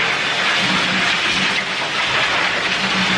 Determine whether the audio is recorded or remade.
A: recorded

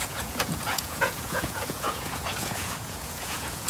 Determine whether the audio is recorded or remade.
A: remade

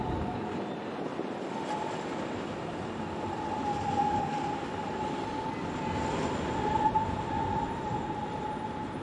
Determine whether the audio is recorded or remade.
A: recorded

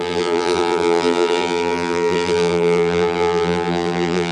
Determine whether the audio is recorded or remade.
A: remade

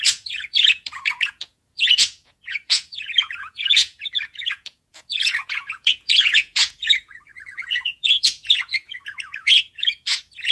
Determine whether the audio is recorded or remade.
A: remade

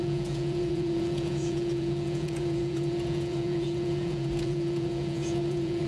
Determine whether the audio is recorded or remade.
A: remade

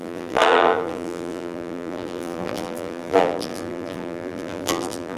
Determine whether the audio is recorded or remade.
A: remade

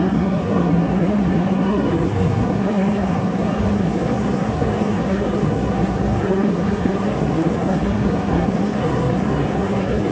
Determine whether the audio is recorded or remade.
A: remade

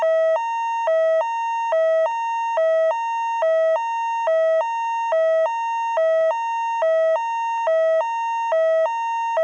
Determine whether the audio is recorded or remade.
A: recorded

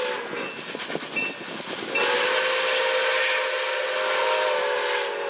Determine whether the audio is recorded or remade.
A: recorded